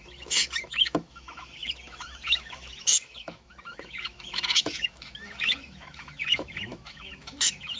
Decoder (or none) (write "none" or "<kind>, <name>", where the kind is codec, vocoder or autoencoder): autoencoder, DAC-VAE